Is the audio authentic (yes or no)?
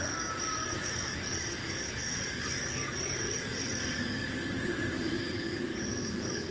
no